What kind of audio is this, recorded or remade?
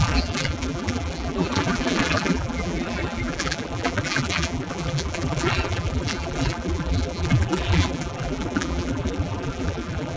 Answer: remade